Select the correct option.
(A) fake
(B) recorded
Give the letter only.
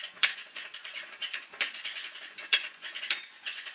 A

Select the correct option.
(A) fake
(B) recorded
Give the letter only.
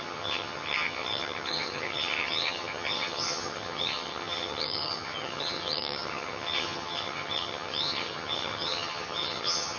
A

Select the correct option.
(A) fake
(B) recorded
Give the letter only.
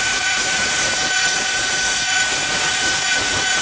A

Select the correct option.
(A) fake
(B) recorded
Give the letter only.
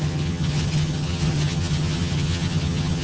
A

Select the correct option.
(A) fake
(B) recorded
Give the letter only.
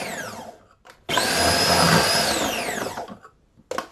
B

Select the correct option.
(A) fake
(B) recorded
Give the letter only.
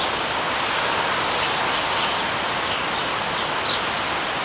B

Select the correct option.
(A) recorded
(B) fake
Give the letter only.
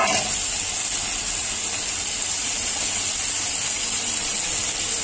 A